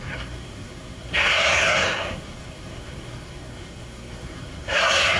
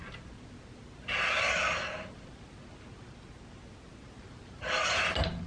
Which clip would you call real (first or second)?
second